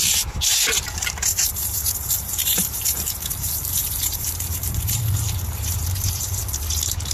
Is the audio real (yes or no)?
no